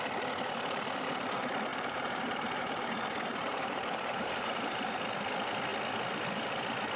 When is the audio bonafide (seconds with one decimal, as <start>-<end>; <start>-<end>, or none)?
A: 0.0-1.7; 3.0-3.5; 5.0-7.0